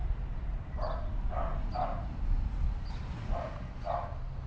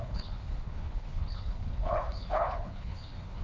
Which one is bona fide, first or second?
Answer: first